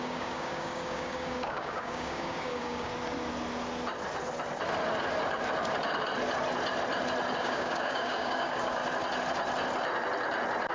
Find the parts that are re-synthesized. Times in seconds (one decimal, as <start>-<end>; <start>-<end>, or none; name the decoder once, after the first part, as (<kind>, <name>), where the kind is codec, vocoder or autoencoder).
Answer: 0.0-2.9 (codec, DAC); 7.4-8.8